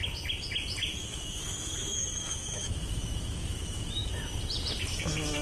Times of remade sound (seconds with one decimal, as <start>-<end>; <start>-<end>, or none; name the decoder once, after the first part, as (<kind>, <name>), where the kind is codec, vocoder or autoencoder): 0.9-4.1 (autoencoder, DAC-VAE); 4.9-5.4